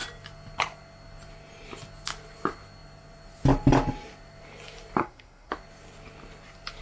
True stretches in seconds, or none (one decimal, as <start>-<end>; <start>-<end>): 0.0-5.0; 5.5-6.8